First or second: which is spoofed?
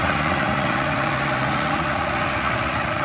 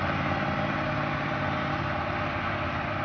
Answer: first